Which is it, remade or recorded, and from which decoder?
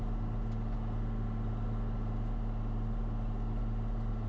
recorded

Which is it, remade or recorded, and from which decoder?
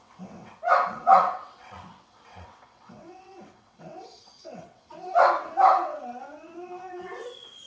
remade, vocoder, WaveNeXt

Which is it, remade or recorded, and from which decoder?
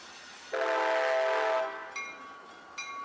recorded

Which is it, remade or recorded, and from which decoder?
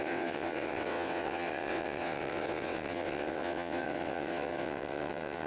remade, vocoder, WaveNeXt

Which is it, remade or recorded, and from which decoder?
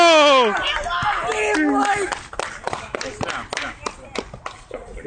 recorded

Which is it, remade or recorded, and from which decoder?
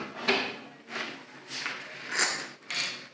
recorded